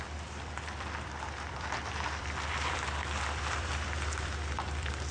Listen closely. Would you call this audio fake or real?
fake